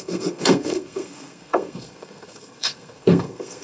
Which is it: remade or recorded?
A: remade